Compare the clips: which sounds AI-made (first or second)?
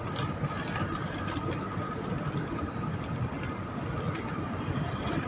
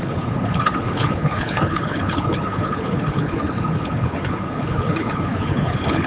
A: second